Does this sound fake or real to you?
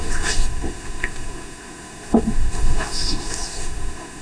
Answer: fake